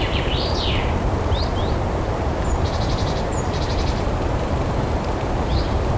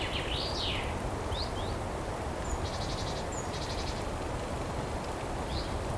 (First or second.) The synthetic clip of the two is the first